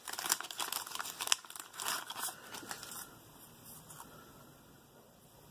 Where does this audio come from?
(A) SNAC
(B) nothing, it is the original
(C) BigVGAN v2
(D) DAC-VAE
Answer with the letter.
B